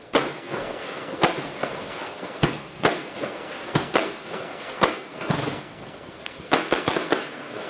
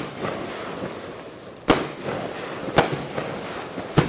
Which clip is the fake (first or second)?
first